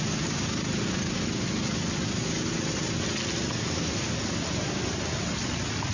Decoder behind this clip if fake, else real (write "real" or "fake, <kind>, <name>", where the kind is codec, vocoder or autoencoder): real